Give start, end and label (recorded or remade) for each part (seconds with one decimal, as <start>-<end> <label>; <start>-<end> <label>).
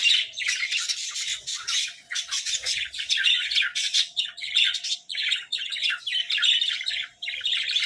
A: 0.0-1.3 recorded; 1.3-6.0 remade; 6.0-7.9 recorded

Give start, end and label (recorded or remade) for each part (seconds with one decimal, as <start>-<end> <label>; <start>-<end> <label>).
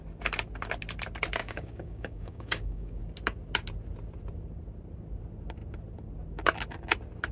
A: 0.0-1.4 recorded; 1.4-3.0 remade; 3.0-7.3 recorded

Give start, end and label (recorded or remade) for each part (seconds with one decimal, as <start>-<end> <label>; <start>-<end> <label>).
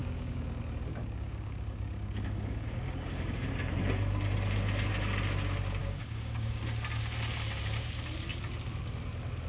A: 0.0-0.6 remade; 0.6-1.0 recorded; 1.0-3.5 remade; 3.5-5.8 recorded; 5.8-6.6 remade; 6.6-9.5 recorded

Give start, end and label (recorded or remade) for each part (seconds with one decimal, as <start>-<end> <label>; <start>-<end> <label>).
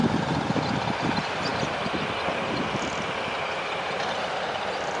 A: 0.0-5.0 recorded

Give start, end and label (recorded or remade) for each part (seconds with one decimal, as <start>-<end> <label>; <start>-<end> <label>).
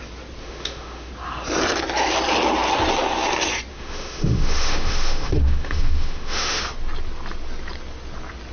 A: 0.0-0.4 recorded; 0.4-1.1 remade; 1.1-3.7 recorded; 3.7-6.6 remade; 6.6-8.5 recorded